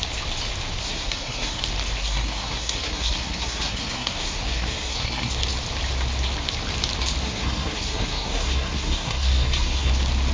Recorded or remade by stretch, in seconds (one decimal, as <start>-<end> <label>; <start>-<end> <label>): 0.0-0.8 recorded; 0.8-1.6 remade; 1.6-2.0 recorded; 2.0-5.3 remade; 5.3-7.2 recorded; 7.2-9.9 remade; 9.9-10.3 recorded